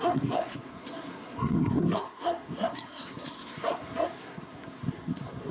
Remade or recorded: remade